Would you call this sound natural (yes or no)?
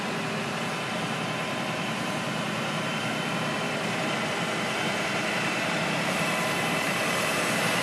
no